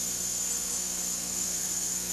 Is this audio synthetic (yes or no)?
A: yes